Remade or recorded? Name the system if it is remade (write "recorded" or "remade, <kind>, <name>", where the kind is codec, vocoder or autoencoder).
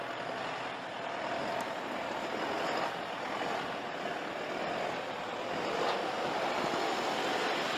recorded